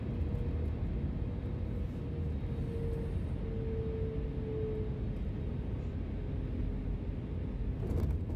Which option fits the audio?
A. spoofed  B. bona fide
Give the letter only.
B